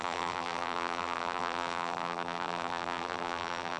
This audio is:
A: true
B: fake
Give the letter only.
B